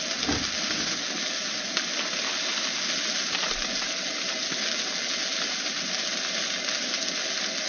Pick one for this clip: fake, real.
real